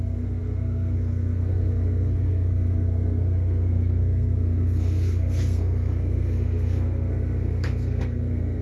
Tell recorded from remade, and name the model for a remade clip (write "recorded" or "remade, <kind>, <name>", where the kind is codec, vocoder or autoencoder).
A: remade, codec, SNAC